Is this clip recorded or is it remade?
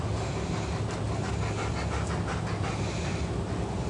recorded